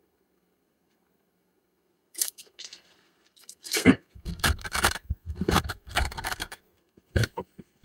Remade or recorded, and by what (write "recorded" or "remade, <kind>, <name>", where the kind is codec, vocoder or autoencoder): remade, codec, SNAC